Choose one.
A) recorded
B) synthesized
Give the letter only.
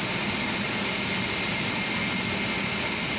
A